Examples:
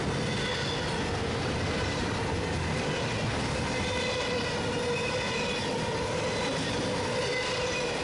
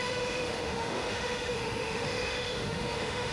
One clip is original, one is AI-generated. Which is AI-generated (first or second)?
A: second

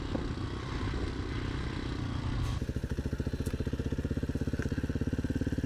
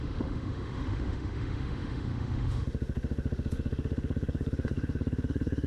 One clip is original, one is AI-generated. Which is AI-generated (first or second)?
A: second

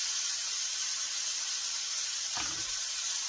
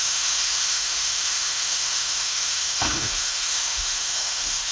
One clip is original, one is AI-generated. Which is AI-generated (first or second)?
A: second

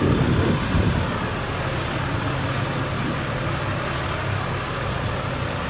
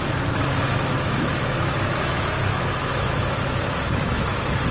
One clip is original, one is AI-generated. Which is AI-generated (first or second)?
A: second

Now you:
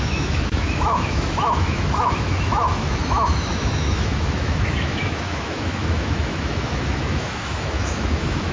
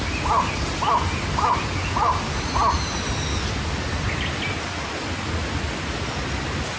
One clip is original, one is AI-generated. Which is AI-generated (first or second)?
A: first